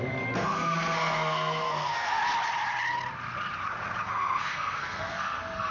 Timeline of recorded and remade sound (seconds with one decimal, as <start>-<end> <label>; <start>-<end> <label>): 0.0-2.2 remade; 2.2-4.1 recorded; 4.1-5.7 remade